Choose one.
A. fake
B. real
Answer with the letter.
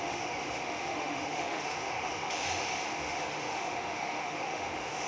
A